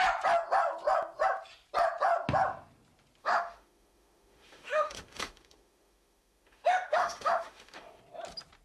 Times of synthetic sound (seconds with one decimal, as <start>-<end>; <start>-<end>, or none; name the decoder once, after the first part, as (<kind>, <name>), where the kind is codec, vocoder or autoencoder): 3.2-8.0 (autoencoder, DAC-VAE)